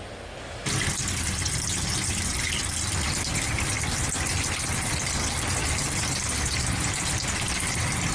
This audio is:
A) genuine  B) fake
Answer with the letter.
A